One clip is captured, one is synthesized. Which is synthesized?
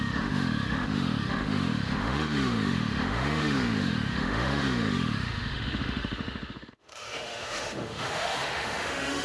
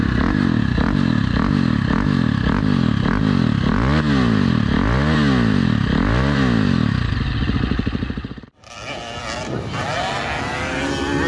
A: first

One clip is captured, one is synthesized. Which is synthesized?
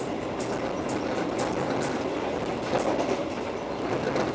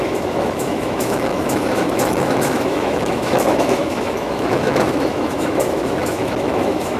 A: second